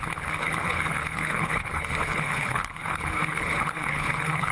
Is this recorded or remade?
remade